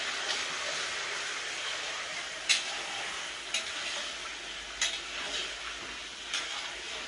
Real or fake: real